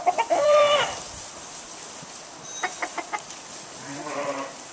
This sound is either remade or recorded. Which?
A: remade